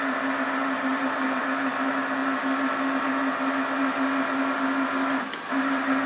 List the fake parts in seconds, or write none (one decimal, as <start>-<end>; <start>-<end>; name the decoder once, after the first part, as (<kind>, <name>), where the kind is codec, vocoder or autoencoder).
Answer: 0.9-1.4 (vocoder, BigVGAN v2)